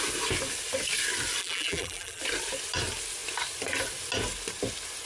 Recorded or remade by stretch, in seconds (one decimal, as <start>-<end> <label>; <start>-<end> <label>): 0.0-1.4 recorded; 1.4-2.2 remade; 2.2-5.1 recorded